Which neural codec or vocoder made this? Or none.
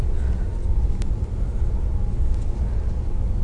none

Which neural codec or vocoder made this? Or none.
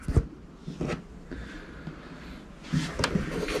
none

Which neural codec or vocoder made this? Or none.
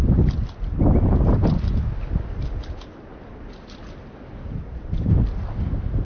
none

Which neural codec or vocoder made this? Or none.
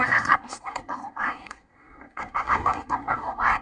codec, SNAC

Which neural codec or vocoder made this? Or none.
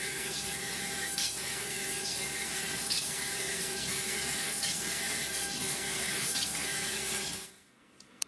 codec, SNAC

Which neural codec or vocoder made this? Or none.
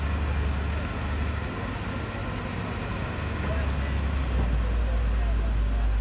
none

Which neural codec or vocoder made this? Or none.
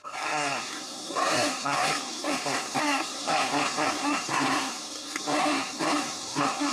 codec, SNAC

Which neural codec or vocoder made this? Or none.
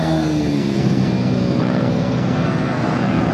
codec, SNAC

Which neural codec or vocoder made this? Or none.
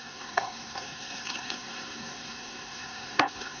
codec, SNAC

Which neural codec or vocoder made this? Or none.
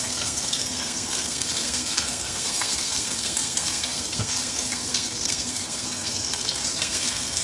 codec, SNAC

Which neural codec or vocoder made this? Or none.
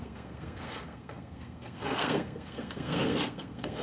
codec, SNAC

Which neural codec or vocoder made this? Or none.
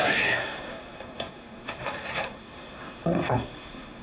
codec, SNAC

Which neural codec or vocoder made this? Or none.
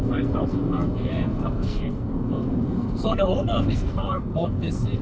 codec, SNAC